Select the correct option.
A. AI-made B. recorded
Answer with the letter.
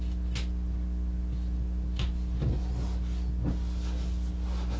B